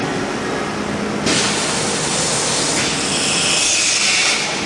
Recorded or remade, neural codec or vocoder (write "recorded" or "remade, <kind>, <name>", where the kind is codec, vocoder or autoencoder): recorded